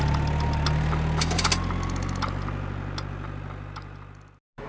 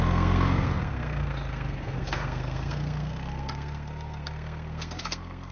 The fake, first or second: second